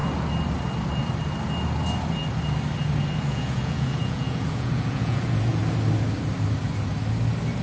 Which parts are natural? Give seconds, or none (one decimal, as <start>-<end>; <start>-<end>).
0.0-3.3; 5.6-7.6